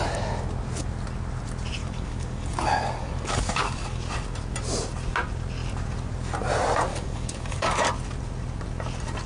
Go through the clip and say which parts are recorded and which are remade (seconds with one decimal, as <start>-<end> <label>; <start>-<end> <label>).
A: 0.0-1.8 recorded; 1.8-4.0 remade; 4.0-6.9 recorded; 6.9-7.9 remade; 7.9-9.3 recorded

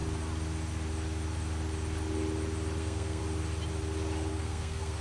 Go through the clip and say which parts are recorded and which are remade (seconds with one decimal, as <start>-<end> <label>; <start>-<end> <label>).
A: 0.0-2.8 recorded; 2.8-3.2 remade; 3.2-4.3 recorded; 4.3-5.0 remade

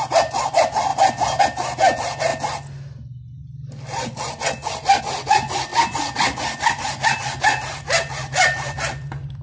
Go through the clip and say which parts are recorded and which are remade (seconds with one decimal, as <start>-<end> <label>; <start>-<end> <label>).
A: 0.0-9.4 recorded

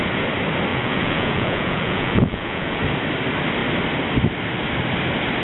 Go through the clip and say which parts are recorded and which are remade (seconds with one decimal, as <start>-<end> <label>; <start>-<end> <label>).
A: 0.0-0.7 recorded; 0.7-2.8 remade; 2.8-5.4 recorded

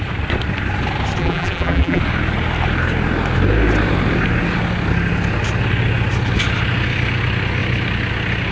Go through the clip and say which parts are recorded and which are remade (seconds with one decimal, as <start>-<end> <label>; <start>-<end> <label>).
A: 0.0-1.2 recorded; 1.2-2.0 remade; 2.0-8.5 recorded

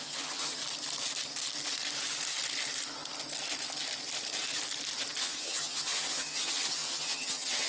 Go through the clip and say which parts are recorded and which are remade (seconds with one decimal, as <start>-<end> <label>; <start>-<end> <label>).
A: 0.0-0.6 remade; 0.6-5.2 recorded; 5.2-7.7 remade

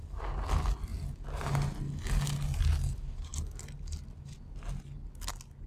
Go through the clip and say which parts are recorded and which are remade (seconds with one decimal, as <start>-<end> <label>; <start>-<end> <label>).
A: 0.0-5.7 recorded